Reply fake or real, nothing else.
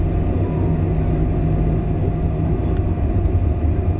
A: real